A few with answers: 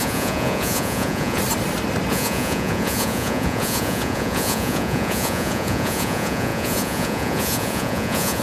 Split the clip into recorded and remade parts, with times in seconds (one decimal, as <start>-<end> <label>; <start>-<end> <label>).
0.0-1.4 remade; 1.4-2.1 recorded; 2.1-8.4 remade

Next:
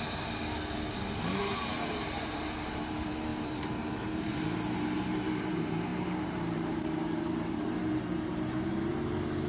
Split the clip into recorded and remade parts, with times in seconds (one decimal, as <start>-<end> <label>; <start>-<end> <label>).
0.0-0.4 remade; 0.4-1.4 recorded; 1.4-9.5 remade

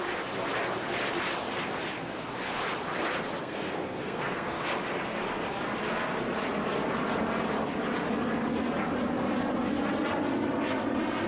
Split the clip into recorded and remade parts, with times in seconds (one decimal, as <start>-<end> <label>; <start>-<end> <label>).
0.0-3.4 recorded; 3.4-4.6 remade; 4.6-11.3 recorded